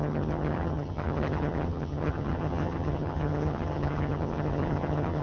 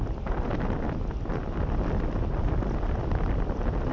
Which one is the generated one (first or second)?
first